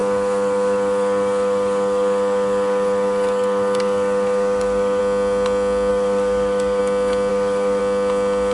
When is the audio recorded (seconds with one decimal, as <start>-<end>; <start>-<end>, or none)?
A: 5.0-5.9; 6.8-7.3; 7.8-8.5